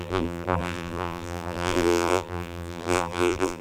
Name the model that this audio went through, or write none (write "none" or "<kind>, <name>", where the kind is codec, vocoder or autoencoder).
vocoder, BigVGAN v2